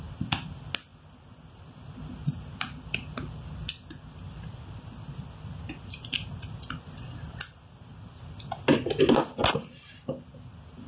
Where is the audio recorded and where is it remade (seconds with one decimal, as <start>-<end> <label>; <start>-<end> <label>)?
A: 0.0-10.9 recorded